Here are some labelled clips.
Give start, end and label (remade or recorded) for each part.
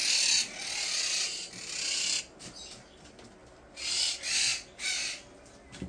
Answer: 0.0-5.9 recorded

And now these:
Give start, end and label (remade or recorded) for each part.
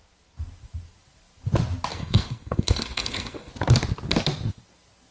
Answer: 0.0-1.9 recorded; 1.9-3.5 remade; 3.5-5.1 recorded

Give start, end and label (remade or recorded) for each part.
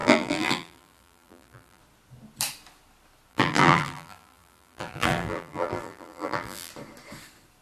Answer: 0.0-1.8 remade; 1.8-3.3 recorded; 3.3-6.7 remade; 6.7-7.6 recorded